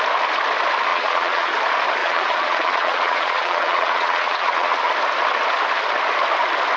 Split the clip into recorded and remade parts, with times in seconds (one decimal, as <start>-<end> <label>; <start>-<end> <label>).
0.0-0.9 recorded; 0.9-1.5 remade; 1.5-2.0 recorded; 2.0-4.9 remade; 4.9-6.8 recorded